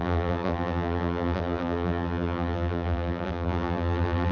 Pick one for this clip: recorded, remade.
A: remade